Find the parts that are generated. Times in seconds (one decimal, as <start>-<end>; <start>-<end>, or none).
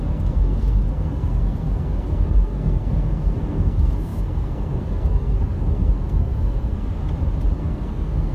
0.0-7.0; 7.6-8.3